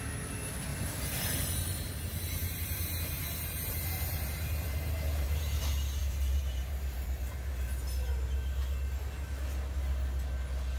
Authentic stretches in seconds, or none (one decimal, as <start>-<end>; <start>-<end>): 0.0-0.7; 5.6-6.0; 7.5-10.8